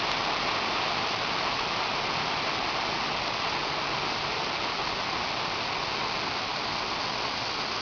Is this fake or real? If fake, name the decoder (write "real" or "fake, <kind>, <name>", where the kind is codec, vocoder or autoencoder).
real